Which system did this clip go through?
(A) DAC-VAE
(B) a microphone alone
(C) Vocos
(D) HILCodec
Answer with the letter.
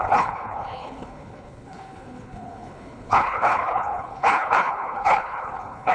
D